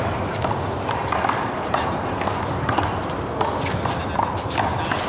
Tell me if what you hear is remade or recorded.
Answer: recorded